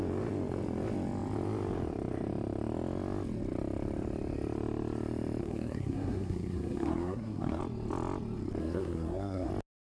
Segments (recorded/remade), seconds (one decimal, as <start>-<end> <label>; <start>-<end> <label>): 0.0-5.4 recorded; 5.4-7.6 remade; 7.6-8.6 recorded; 8.6-9.5 remade; 9.5-10.0 recorded